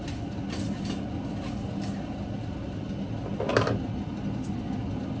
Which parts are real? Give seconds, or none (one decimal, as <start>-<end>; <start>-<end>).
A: 0.0-5.2